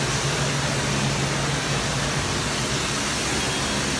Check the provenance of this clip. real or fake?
real